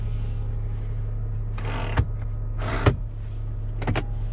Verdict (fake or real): real